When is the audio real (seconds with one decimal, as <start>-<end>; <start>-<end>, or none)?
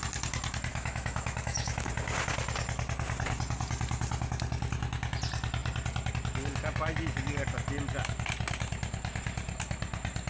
0.0-0.7; 1.9-10.3